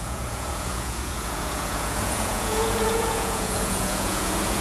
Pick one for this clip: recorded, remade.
remade